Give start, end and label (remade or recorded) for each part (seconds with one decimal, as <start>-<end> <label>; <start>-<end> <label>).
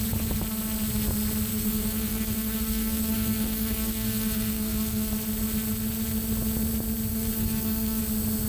0.0-1.5 recorded; 1.5-5.1 remade; 5.1-7.1 recorded; 7.1-8.0 remade; 8.0-8.5 recorded